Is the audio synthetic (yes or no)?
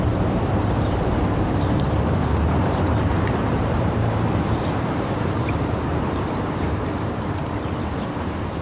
yes